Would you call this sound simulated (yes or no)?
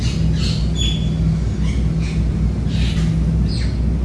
no